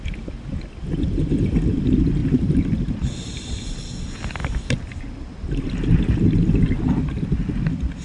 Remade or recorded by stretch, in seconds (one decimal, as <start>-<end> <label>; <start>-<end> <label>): 0.0-8.0 recorded